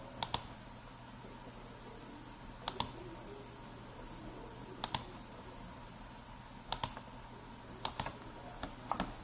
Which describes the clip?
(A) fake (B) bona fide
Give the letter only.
B